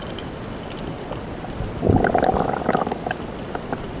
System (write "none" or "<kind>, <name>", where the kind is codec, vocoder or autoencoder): none